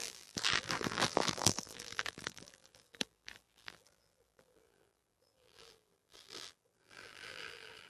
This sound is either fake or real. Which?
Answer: fake